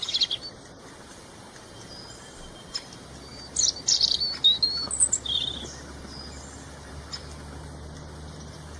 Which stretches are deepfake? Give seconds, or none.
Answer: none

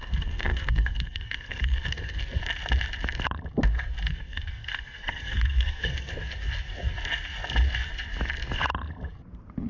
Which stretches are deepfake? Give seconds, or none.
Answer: 0.0-2.4; 4.1-6.1

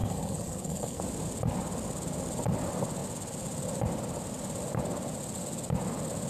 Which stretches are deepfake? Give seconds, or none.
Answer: 0.0-1.0